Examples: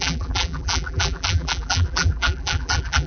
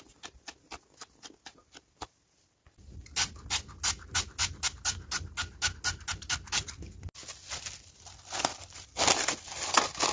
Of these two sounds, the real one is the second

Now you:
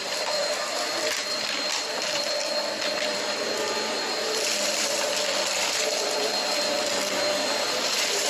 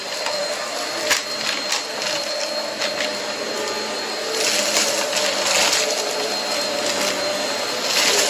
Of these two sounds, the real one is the second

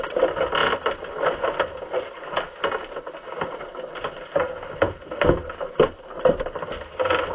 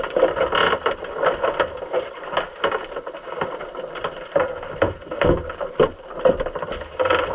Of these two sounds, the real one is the first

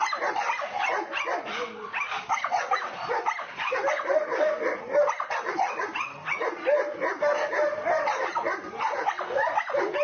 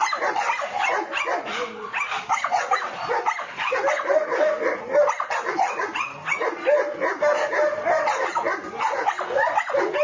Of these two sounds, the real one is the second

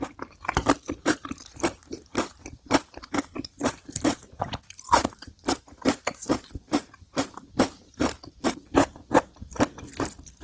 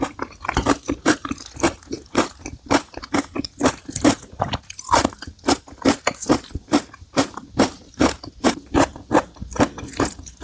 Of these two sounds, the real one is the second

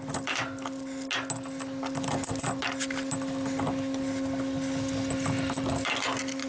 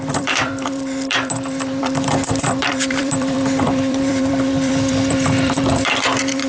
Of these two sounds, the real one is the first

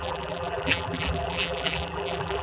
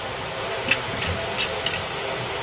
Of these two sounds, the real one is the second